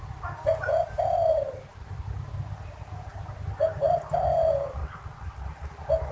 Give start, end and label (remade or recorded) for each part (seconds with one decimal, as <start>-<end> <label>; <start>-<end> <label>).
0.0-4.8 recorded; 4.8-5.5 remade; 5.5-6.1 recorded